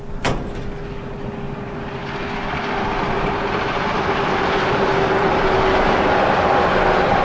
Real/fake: real